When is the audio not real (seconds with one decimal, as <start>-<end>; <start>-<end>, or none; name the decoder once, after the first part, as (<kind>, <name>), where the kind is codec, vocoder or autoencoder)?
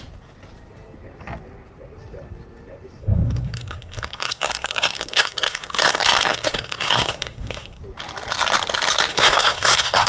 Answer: 3.0-7.8 (codec, SNAC); 9.1-10.1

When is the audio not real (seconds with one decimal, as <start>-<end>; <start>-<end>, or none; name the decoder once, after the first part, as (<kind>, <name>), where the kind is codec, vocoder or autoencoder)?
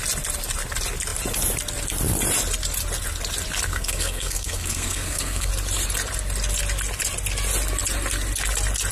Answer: 3.7-5.5 (codec, SNAC)